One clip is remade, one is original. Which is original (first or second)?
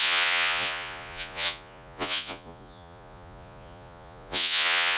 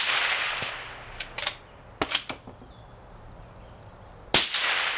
second